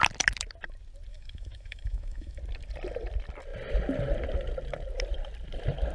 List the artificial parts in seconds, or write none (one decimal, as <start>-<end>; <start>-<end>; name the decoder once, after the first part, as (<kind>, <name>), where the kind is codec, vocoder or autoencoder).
1.1-2.4 (autoencoder, DAC-VAE)